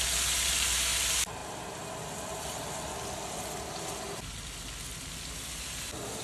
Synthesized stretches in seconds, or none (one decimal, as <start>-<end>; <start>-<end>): none